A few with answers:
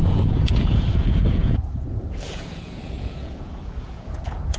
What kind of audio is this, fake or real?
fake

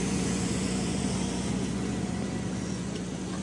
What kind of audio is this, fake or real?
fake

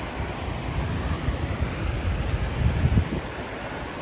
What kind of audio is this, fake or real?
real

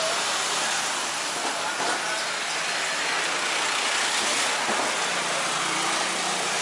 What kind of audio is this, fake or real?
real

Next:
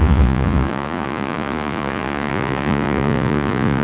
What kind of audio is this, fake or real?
fake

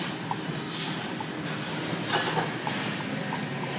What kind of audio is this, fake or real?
real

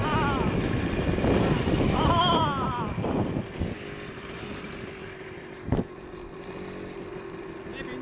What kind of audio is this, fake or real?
real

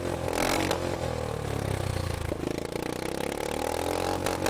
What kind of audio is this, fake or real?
real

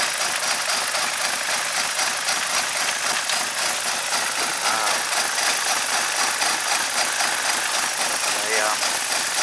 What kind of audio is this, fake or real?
real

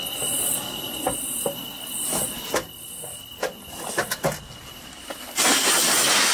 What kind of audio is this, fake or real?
real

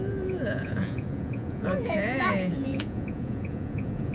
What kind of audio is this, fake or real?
fake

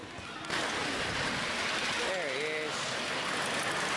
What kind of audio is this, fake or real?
real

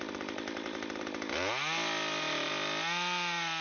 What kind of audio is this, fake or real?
real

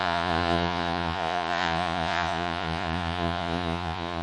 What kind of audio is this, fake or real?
fake